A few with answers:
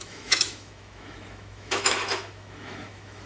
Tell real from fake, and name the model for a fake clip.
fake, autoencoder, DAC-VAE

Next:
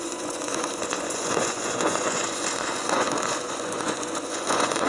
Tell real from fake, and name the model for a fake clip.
fake, vocoder, Vocos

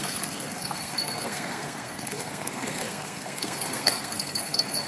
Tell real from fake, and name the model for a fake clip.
fake, codec, SNAC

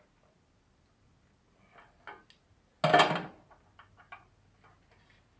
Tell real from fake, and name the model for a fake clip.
real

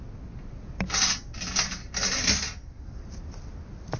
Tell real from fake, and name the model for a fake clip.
real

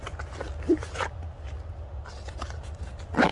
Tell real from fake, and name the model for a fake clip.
real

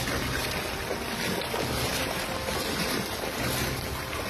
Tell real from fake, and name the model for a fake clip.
real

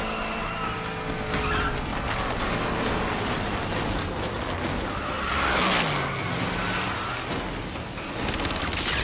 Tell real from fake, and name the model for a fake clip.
real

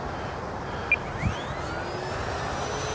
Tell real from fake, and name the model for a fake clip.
real